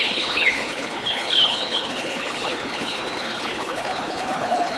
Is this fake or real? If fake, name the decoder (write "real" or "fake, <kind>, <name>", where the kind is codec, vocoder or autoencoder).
fake, codec, HILCodec